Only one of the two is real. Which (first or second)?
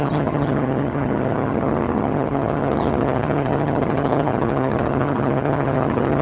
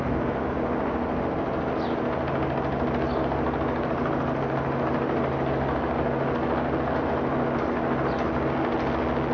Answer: second